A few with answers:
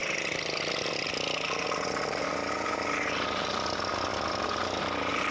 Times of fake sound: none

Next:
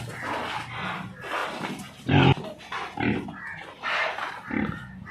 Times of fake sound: none